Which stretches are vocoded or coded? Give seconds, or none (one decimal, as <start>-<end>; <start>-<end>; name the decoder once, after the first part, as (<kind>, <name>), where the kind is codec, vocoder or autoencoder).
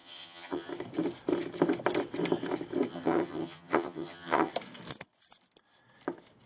0.0-0.7 (vocoder, HiFi-GAN); 2.9-4.5